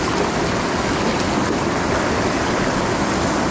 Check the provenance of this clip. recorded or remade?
recorded